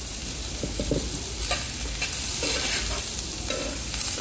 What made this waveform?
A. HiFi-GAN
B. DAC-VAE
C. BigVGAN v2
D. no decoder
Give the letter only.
D